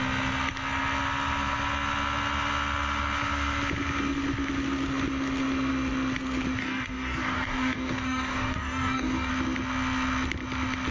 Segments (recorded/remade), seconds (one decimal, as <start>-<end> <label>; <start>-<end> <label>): 0.0-6.6 recorded; 6.6-9.3 remade; 9.3-10.9 recorded